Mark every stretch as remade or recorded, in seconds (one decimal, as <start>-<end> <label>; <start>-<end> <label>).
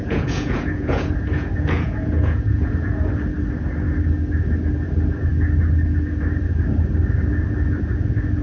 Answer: 0.0-3.1 remade; 3.1-8.4 recorded